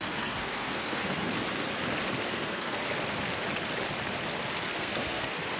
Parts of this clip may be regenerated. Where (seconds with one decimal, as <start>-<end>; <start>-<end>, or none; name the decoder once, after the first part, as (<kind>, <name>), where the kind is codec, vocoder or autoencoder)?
0.0-1.3 (codec, SNAC); 2.3-2.8; 4.8-5.6